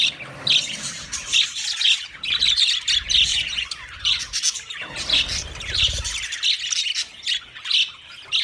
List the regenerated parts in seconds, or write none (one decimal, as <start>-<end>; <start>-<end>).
3.3-4.4

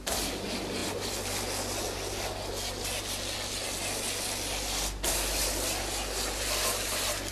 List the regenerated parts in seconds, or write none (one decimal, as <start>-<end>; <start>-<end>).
none

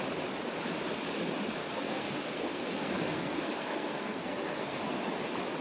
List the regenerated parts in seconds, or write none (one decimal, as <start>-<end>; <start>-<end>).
1.6-5.0

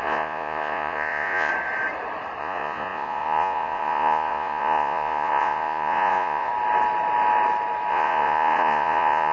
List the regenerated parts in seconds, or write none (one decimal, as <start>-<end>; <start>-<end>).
0.0-1.5; 2.4-6.5; 7.9-9.3

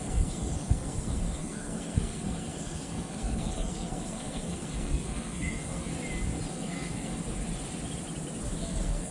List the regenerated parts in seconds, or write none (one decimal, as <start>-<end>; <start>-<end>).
0.0-5.9; 6.5-7.1; 8.6-9.1

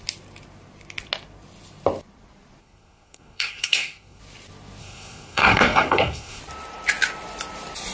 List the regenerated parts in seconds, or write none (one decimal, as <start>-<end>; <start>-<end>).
2.6-4.2; 4.8-6.4

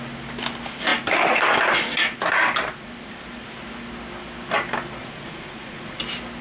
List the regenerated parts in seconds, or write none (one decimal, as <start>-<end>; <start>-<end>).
5.0-6.0

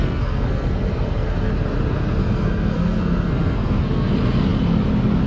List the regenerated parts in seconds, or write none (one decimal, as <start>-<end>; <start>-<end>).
0.0-1.5; 2.2-4.1